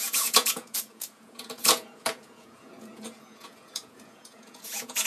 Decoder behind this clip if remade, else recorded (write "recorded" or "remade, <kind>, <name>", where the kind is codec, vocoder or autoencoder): remade, vocoder, Vocos